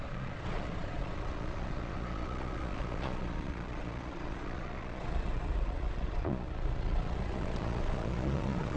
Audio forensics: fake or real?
fake